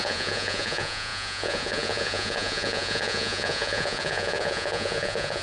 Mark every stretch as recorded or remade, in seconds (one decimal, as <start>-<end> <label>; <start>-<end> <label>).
0.0-5.4 remade